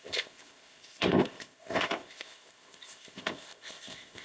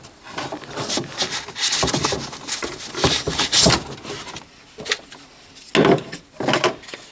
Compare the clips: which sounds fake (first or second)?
first